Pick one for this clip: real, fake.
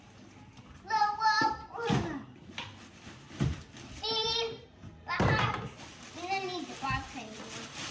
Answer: fake